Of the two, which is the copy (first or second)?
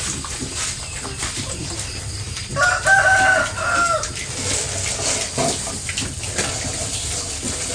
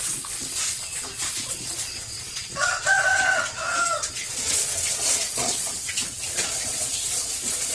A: second